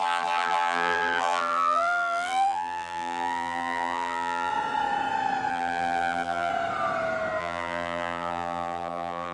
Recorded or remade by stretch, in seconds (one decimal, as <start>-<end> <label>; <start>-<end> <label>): 0.0-4.5 remade; 4.5-5.5 recorded; 5.5-6.5 remade; 6.5-7.4 recorded; 7.4-9.3 remade